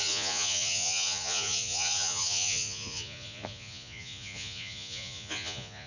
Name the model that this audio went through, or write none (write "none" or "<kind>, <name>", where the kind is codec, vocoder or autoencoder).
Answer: vocoder, Vocos